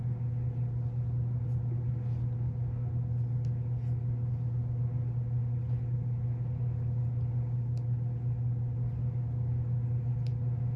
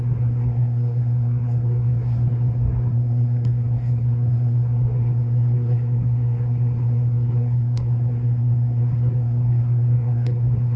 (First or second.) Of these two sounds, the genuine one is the first